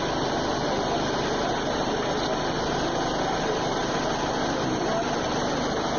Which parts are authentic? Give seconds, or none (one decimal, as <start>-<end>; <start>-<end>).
0.0-6.0